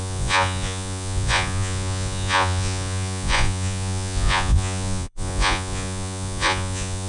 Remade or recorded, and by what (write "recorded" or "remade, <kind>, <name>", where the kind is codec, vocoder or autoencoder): remade, vocoder, Vocos